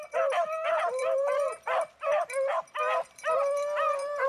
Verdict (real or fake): fake